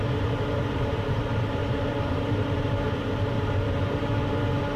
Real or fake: fake